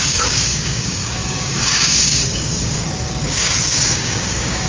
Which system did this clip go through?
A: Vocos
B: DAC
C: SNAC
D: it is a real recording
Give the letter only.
B